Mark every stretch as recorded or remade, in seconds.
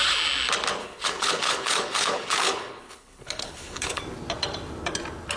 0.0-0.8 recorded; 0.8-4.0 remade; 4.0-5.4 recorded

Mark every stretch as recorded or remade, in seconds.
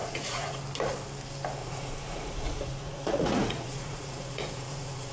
0.0-0.6 remade; 0.6-1.6 recorded; 1.6-5.1 remade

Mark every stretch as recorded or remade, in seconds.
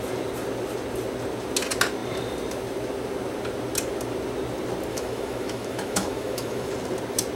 0.0-4.9 recorded; 4.9-6.7 remade; 6.7-7.4 recorded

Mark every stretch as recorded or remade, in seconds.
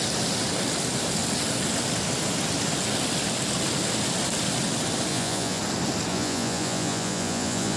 0.0-5.1 recorded; 5.1-5.6 remade; 5.6-6.1 recorded; 6.1-7.8 remade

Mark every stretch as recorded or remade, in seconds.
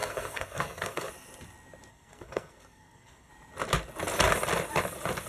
0.0-1.1 remade; 1.1-1.9 recorded; 1.9-3.3 remade; 3.3-5.3 recorded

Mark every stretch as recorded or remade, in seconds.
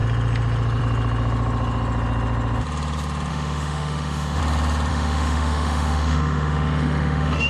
0.0-3.3 recorded; 3.3-4.4 remade; 4.4-4.9 recorded; 4.9-7.5 remade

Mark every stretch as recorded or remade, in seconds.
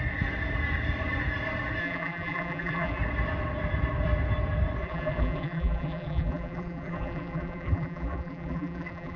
0.0-1.8 recorded; 1.8-3.0 remade; 3.0-4.8 recorded; 4.8-9.2 remade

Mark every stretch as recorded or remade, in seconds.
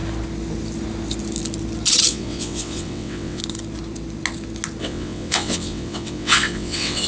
0.0-2.1 recorded; 2.1-3.4 remade; 3.4-4.8 recorded; 4.8-7.1 remade